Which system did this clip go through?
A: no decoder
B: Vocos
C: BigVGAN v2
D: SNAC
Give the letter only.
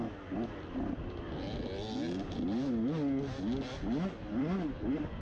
A